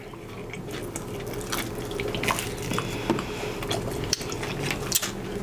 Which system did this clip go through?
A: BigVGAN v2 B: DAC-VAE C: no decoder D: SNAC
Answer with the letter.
C